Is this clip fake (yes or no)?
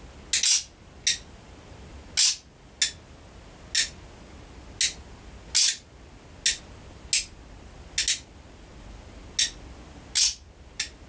no